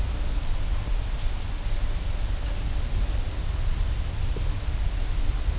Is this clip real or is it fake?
real